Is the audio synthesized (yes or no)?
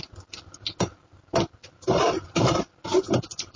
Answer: no